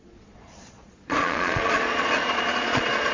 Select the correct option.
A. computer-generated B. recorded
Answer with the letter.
A